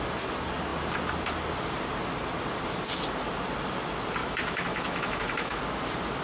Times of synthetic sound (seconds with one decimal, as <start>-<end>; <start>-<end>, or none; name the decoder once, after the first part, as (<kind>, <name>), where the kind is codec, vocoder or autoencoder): 4.2-5.6 (autoencoder, DAC-VAE)